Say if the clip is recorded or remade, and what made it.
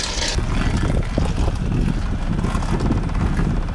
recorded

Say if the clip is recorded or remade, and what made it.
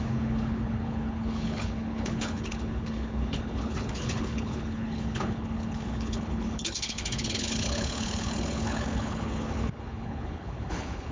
remade, codec, HILCodec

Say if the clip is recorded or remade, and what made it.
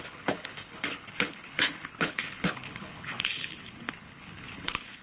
remade, codec, HILCodec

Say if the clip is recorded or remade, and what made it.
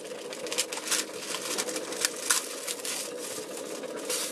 recorded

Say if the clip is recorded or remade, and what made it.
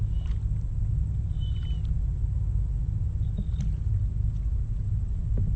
recorded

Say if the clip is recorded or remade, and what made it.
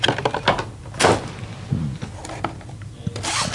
recorded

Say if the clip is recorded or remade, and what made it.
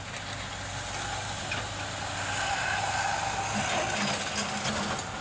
recorded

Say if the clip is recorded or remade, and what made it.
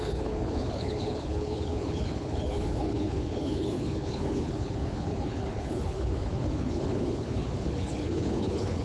remade, codec, HILCodec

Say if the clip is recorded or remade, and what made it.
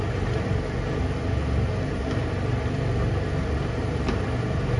recorded